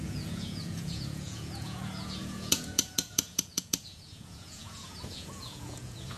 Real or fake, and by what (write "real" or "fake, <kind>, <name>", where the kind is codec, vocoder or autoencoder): fake, vocoder, Vocos